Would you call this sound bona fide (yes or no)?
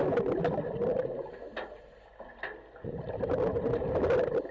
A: yes